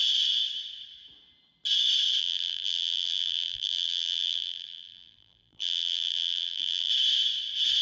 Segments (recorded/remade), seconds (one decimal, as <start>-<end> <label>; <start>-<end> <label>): 0.0-2.2 recorded; 2.2-6.9 remade; 6.9-7.8 recorded